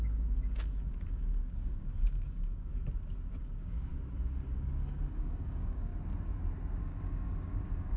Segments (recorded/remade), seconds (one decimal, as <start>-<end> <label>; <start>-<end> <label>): 0.0-2.7 remade; 2.7-3.4 recorded; 3.4-3.9 remade; 3.9-4.5 recorded; 4.5-5.9 remade; 5.9-6.8 recorded; 6.8-8.0 remade